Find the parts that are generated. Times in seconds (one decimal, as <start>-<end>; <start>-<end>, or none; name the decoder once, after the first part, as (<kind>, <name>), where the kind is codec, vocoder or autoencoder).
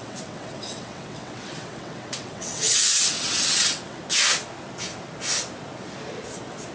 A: 0.0-4.0 (vocoder, WaveNeXt)